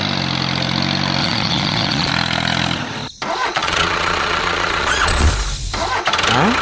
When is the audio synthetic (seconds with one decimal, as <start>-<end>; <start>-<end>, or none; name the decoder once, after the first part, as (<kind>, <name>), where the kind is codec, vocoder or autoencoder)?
1.2-2.1 (vocoder, Vocos); 3.4-5.3